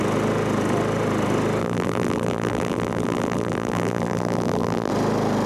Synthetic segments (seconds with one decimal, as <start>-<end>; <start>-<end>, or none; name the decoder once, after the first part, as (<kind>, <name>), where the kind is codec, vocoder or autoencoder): 1.6-4.9 (vocoder, BigVGAN v2)